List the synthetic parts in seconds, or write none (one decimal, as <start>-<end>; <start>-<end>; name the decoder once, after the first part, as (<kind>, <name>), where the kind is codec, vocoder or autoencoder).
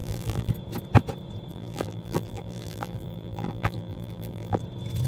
0.0-0.5 (vocoder, BigVGAN v2); 1.5-4.6